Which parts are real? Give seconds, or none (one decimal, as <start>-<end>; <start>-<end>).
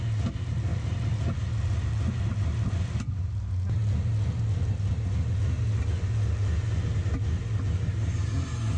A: 0.0-8.8